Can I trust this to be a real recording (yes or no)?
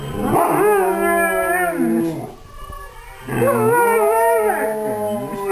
yes